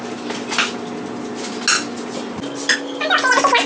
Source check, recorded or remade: recorded